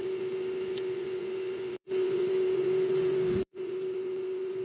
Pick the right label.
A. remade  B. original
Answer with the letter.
A